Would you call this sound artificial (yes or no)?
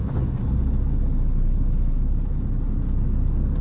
no